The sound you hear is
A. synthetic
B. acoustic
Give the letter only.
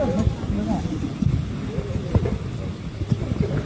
B